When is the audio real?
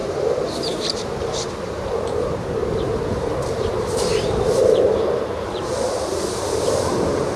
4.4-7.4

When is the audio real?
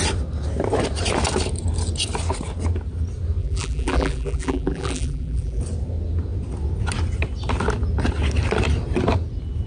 0.0-3.4; 5.6-9.7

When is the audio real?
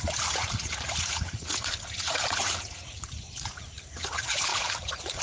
none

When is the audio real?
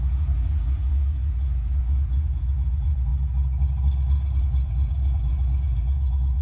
3.1-4.4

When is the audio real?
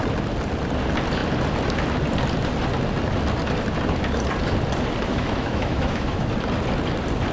0.0-5.1; 6.3-7.3